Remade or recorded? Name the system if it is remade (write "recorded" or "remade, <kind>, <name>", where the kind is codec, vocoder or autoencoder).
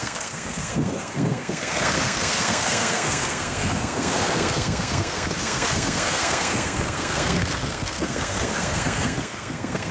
remade, codec, SNAC